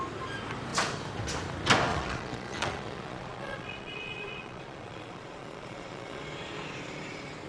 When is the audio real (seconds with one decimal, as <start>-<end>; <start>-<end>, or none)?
0.0-1.9; 6.2-7.5